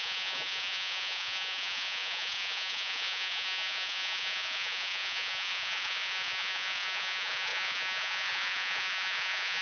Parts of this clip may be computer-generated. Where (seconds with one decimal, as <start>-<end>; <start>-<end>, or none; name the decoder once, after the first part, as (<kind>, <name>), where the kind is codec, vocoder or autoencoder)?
0.0-9.6 (vocoder, Vocos)